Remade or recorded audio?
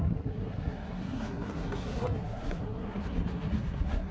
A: remade